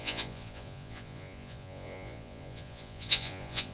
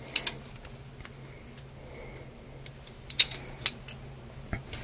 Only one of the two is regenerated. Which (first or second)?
first